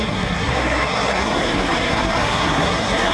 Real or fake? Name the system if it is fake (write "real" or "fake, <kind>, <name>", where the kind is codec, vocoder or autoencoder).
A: fake, codec, SNAC